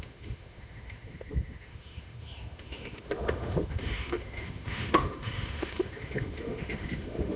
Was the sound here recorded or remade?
remade